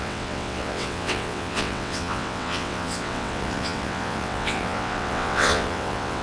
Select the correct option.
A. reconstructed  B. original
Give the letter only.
A